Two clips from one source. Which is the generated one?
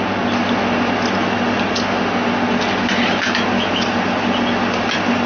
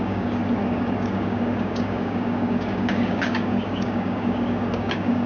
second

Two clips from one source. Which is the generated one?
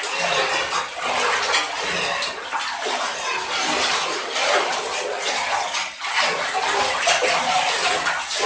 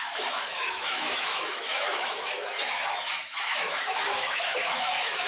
second